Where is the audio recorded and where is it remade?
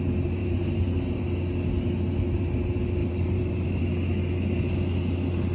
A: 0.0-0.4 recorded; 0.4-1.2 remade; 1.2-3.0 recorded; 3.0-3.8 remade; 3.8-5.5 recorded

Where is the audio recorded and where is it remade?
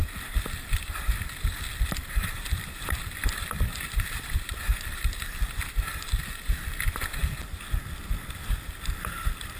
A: 0.0-7.2 remade; 7.2-8.1 recorded; 8.1-9.6 remade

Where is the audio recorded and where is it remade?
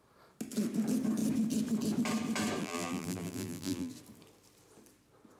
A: 0.0-2.6 recorded; 2.6-3.9 remade; 3.9-5.4 recorded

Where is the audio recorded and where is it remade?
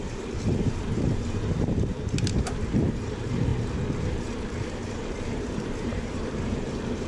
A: 0.0-7.1 remade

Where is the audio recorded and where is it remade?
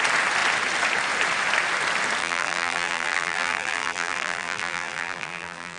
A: 0.0-2.2 recorded; 2.2-5.8 remade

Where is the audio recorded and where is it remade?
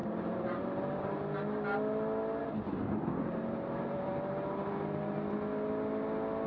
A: 0.0-1.1 remade; 1.1-2.4 recorded; 2.4-4.7 remade; 4.7-6.5 recorded